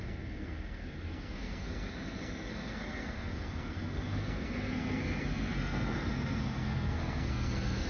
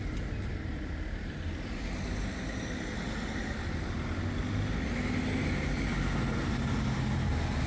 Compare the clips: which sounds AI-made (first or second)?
first